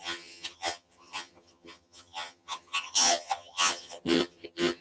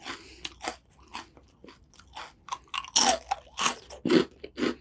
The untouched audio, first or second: second